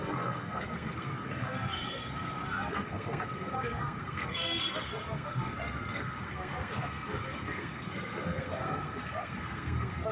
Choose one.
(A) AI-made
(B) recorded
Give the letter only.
A